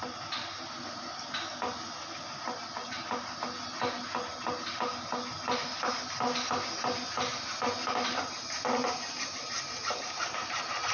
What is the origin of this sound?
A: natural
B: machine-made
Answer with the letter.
A